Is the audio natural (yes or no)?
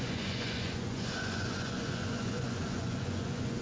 no